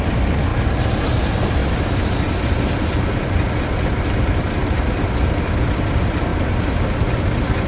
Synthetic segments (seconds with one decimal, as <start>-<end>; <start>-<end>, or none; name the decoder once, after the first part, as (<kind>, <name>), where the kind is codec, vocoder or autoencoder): 1.6-4.1 (vocoder, BigVGAN v2); 6.3-7.2